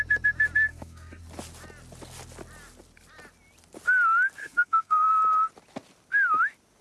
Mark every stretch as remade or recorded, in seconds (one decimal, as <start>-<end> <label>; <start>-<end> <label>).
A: 0.0-0.7 recorded; 0.7-1.2 remade; 1.2-4.4 recorded; 4.4-5.1 remade; 5.1-6.8 recorded